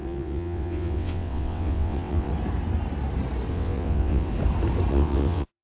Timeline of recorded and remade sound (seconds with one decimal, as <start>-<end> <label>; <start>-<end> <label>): 0.0-2.3 remade; 2.3-3.5 recorded; 3.5-4.3 remade; 4.3-4.9 recorded; 4.9-5.6 remade